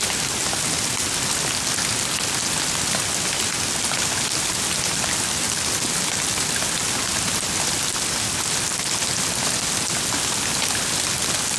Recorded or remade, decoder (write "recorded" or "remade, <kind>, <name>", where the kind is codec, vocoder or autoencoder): recorded